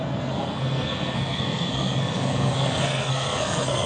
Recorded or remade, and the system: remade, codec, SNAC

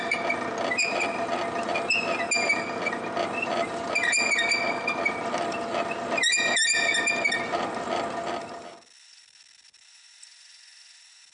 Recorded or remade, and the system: recorded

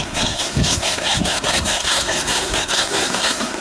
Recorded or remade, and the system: remade, codec, SNAC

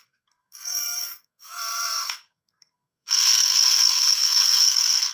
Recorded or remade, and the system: remade, codec, SNAC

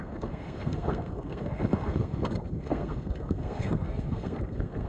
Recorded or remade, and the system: remade, codec, SNAC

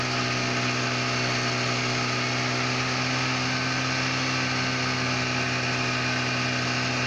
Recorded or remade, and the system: recorded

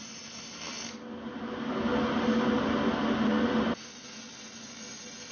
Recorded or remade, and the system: recorded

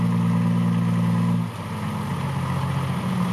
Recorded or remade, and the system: recorded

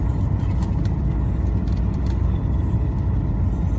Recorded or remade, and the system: recorded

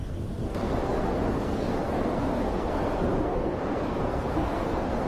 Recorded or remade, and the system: remade, codec, SNAC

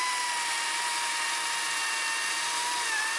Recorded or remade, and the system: recorded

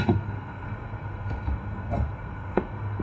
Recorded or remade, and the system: remade, codec, SNAC